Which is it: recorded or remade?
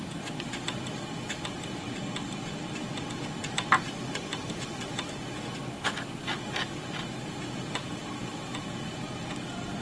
recorded